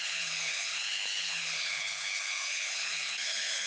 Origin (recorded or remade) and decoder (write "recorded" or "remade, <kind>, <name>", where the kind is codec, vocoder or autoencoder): remade, codec, HILCodec